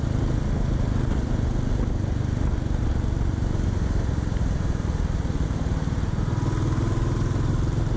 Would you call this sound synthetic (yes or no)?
no